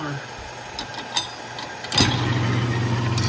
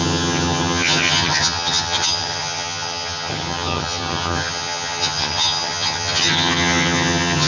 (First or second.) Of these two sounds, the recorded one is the first